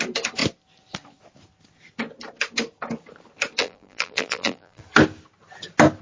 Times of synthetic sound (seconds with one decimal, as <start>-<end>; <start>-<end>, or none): 3.6-4.8